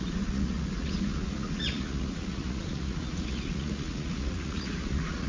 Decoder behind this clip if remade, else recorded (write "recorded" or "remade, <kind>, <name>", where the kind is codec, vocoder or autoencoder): remade, vocoder, Vocos